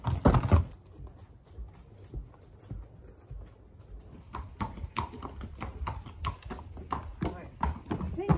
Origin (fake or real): real